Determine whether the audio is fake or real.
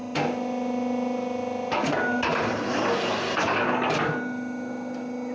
real